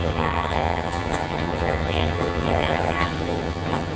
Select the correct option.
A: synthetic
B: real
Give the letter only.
A